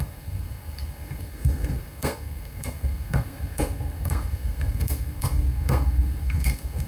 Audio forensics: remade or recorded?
remade